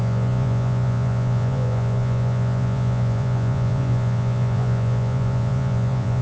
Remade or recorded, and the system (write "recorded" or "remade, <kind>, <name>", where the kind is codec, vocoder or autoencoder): remade, vocoder, Vocos